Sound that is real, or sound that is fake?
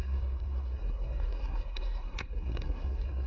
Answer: fake